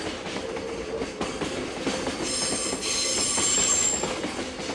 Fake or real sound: real